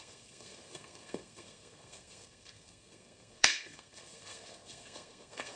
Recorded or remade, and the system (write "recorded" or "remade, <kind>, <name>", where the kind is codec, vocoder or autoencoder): remade, codec, SNAC